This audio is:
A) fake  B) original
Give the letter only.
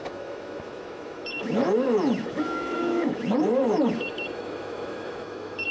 A